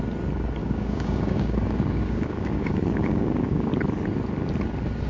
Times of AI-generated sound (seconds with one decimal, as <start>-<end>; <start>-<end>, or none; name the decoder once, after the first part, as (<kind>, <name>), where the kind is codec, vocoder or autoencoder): 0.6-3.7 (codec, DAC)